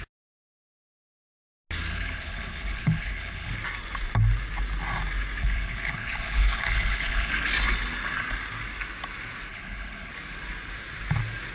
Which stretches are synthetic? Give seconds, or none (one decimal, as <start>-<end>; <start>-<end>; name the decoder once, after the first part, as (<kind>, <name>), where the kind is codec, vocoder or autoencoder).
1.9-3.5 (codec, HILCodec); 5.4-7.3; 9.5-10.1